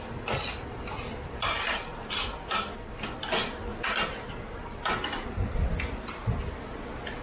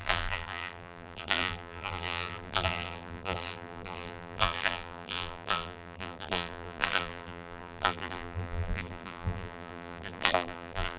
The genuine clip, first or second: first